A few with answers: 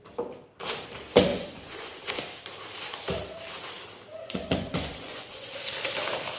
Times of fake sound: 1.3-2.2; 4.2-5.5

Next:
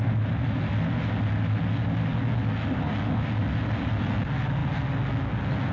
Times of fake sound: none

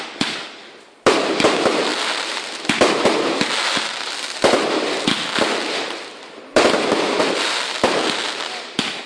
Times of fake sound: none

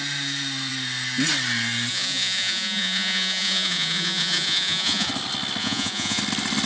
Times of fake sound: 1.9-5.1; 5.6-6.2

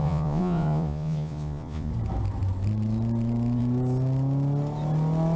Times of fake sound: 0.0-1.9

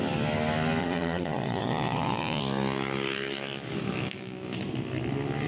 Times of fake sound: 0.8-2.4

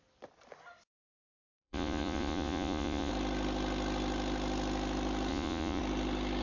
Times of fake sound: 1.1-3.1; 5.3-5.8